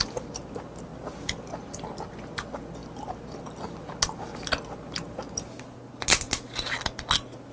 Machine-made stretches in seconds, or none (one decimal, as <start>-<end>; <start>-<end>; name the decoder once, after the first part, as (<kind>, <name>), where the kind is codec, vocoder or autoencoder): none